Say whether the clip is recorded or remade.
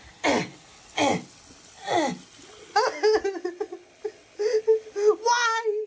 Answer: recorded